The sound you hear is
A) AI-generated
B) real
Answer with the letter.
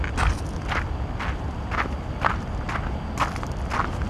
B